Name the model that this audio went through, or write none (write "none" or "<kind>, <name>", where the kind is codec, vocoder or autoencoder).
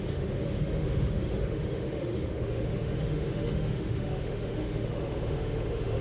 autoencoder, DAC-VAE